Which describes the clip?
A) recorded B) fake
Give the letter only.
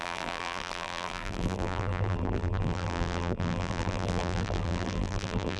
B